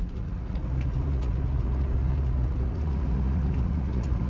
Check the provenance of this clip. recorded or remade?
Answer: remade